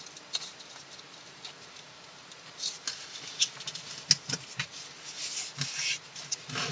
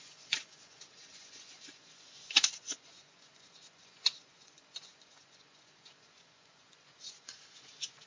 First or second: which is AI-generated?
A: second